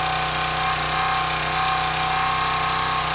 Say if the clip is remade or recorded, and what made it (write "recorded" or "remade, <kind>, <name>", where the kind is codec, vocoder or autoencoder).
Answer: recorded